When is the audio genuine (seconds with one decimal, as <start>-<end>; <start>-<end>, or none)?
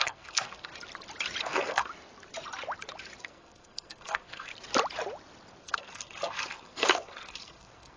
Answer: 0.7-1.4; 1.9-3.2; 4.5-5.6